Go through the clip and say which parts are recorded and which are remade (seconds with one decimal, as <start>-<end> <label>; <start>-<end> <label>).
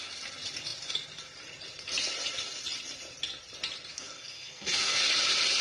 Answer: 0.0-3.9 recorded; 3.9-5.0 remade; 5.0-5.6 recorded